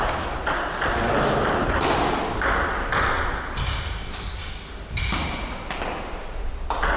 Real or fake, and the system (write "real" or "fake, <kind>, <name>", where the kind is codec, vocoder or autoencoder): real